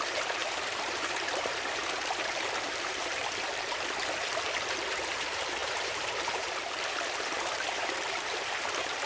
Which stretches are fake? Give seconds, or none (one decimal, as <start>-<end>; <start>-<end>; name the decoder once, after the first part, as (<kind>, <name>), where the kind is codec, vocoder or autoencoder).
0.0-3.2 (vocoder, BigVGAN v2); 4.9-9.1